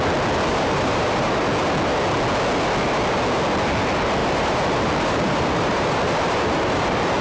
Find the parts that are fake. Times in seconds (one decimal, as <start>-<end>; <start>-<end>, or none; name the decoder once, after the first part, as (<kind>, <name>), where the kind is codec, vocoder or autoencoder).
0.5-1.5 (vocoder, BigVGAN v2); 4.2-7.2